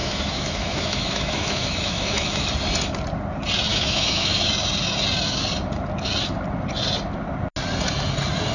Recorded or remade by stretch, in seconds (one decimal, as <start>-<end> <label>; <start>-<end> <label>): 0.0-2.5 remade; 2.5-3.7 recorded; 3.7-4.5 remade; 4.5-8.5 recorded